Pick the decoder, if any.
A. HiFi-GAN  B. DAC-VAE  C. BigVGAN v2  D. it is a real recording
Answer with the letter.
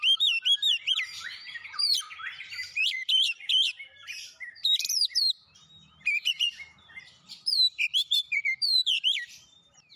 C